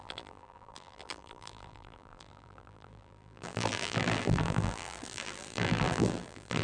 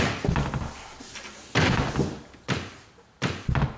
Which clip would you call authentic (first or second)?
second